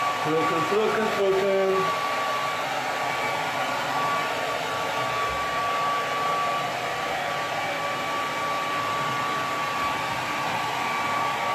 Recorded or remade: recorded